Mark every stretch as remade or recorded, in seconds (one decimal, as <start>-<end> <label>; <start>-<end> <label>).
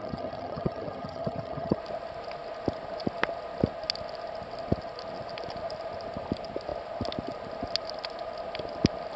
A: 0.0-1.8 remade; 1.8-9.2 recorded